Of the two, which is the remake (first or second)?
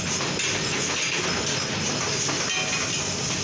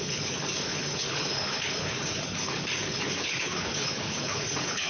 second